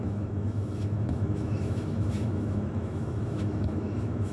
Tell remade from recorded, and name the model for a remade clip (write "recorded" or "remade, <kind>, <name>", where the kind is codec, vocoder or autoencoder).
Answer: remade, autoencoder, DAC-VAE